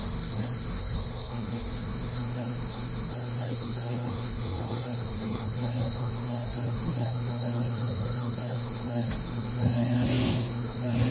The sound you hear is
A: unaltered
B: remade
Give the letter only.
B